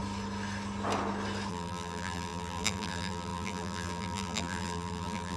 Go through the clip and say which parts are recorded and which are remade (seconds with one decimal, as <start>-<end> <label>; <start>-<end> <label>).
0.0-1.5 recorded; 1.5-5.4 remade